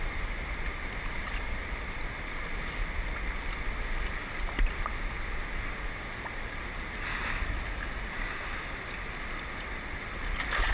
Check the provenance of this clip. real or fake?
real